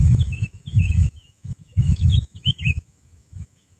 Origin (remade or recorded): remade